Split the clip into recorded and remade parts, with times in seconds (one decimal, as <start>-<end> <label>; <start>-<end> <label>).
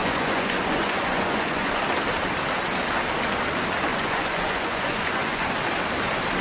0.0-1.8 remade; 1.8-3.9 recorded; 3.9-5.5 remade; 5.5-6.4 recorded